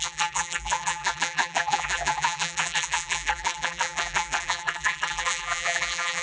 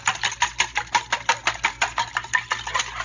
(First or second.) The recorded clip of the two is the second